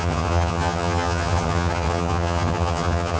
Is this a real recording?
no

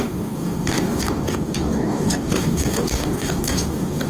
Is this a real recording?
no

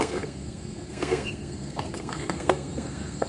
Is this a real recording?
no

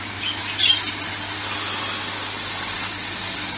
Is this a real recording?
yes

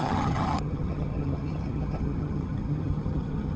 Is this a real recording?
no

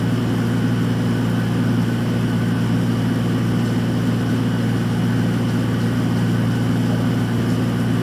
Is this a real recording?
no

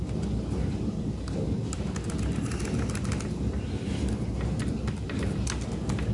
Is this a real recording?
yes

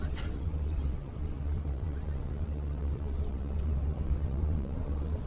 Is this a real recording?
no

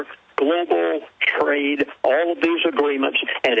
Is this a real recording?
yes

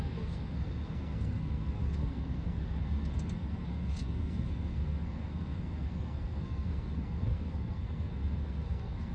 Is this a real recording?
no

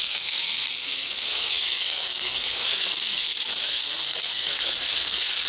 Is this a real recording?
no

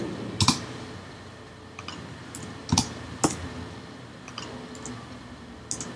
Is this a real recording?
yes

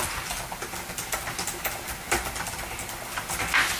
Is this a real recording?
yes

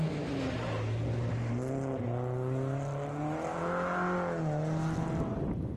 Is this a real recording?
yes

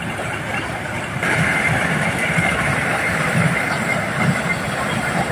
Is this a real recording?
no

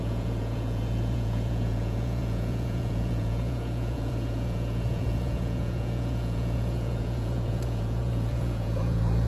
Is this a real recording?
no